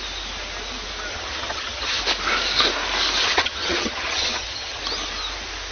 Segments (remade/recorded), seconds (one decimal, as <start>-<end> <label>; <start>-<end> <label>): 0.0-1.1 recorded; 1.1-2.0 remade; 2.0-3.2 recorded; 3.2-4.8 remade; 4.8-5.7 recorded